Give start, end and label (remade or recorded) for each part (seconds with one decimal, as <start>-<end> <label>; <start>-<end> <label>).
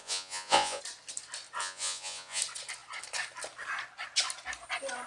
0.0-0.8 remade; 0.8-1.6 recorded; 1.6-2.4 remade; 2.4-5.1 recorded